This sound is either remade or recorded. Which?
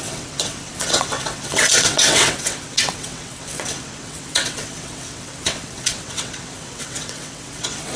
remade